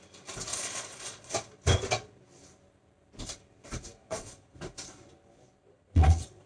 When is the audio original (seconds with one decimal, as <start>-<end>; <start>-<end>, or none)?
0.0-0.5; 1.3-4.0; 4.6-5.6